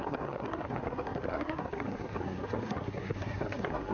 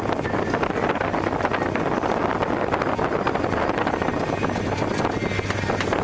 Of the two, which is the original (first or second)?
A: second